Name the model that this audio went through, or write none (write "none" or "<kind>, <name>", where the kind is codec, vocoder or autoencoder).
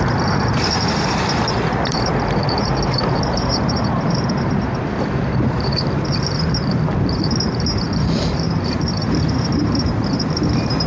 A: vocoder, BigVGAN v2